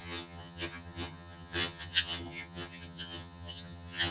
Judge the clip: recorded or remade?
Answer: remade